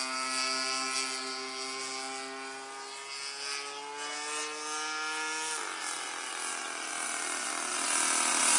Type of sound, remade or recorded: recorded